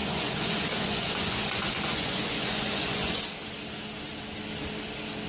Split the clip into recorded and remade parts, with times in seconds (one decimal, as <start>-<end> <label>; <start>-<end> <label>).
0.0-3.2 remade; 3.2-5.3 recorded